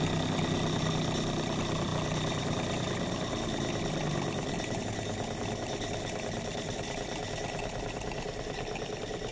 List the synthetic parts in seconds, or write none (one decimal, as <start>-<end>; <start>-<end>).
none